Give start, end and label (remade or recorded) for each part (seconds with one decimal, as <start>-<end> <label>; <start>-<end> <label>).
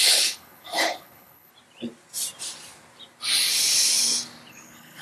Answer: 0.0-1.5 remade; 1.5-4.5 recorded; 4.5-5.0 remade